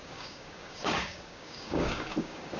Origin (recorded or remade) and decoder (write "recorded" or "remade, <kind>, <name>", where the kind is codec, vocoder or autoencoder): remade, codec, DAC